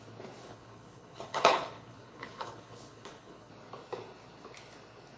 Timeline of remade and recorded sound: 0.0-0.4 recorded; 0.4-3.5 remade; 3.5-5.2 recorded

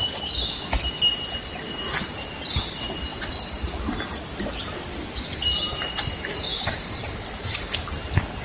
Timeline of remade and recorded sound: 0.0-6.5 recorded; 6.5-7.3 remade; 7.3-8.4 recorded

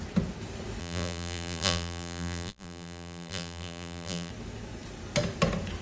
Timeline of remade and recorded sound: 0.0-0.8 recorded; 0.8-4.3 remade; 4.3-5.8 recorded

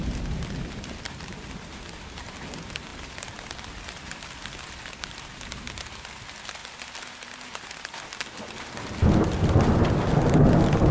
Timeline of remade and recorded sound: 0.0-10.9 recorded

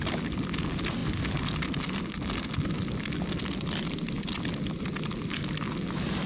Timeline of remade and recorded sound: 0.0-6.3 recorded